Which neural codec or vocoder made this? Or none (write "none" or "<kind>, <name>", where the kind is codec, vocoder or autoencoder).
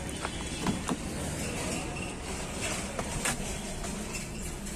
none